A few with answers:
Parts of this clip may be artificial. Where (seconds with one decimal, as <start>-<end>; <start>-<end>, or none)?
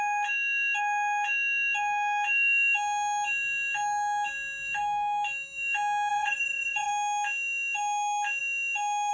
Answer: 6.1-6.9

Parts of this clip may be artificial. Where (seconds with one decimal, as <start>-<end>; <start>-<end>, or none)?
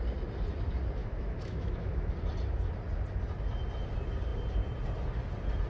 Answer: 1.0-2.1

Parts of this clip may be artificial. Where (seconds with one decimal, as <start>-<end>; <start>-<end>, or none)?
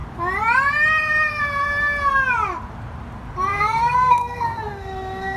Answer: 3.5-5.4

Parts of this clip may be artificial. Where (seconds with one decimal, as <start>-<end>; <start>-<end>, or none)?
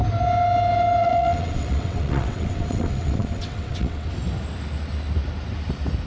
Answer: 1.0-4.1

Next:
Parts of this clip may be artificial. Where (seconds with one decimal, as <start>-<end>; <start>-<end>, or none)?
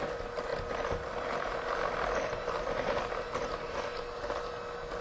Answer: 0.5-3.5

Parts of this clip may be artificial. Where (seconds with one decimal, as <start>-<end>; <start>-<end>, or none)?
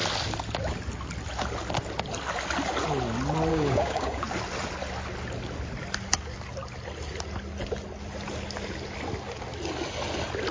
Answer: 3.5-4.2